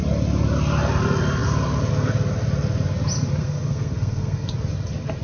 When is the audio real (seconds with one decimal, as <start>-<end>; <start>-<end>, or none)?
0.0-3.4; 4.5-5.2